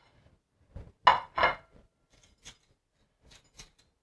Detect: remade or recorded recorded